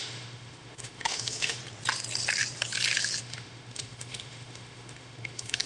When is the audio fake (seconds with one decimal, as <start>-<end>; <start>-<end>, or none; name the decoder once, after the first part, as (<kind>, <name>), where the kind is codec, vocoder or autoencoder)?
0.0-1.6 (autoencoder, DAC-VAE); 3.2-5.7